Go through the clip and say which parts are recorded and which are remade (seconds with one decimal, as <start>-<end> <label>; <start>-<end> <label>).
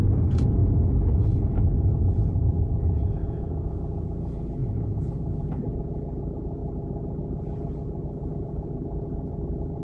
0.0-0.6 remade; 0.6-1.5 recorded; 1.5-6.6 remade; 6.6-8.3 recorded; 8.3-9.8 remade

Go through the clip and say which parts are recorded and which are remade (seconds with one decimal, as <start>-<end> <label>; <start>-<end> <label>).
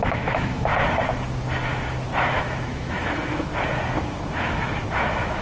0.0-0.7 remade; 0.7-2.2 recorded; 2.2-3.5 remade; 3.5-4.0 recorded; 4.0-5.4 remade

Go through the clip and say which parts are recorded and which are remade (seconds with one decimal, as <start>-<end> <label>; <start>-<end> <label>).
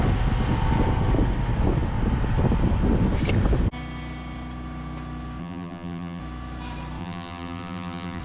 0.0-5.4 recorded; 5.4-6.2 remade; 6.2-7.0 recorded; 7.0-8.2 remade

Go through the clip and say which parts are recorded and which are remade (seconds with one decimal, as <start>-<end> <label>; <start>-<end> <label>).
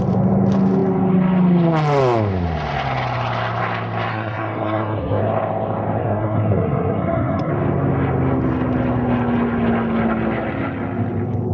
0.0-4.1 recorded; 4.1-5.2 remade; 5.2-6.0 recorded; 6.0-7.5 remade; 7.5-11.5 recorded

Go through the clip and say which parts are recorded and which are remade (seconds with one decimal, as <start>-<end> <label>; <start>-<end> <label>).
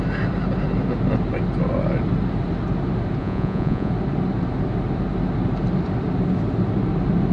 0.0-3.2 recorded; 3.2-3.9 remade; 3.9-7.3 recorded